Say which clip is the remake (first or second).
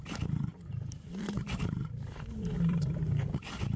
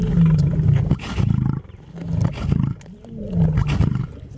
first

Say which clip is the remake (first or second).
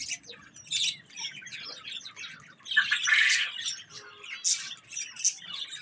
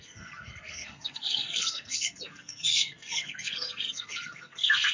second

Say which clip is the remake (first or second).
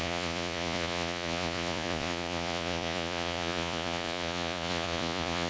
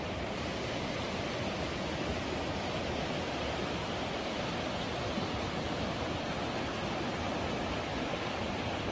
first